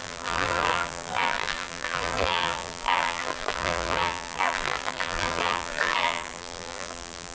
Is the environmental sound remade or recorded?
remade